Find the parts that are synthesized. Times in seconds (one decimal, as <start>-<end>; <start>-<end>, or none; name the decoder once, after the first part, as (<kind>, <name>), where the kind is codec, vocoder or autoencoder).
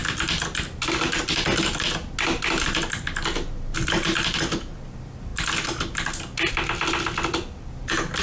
none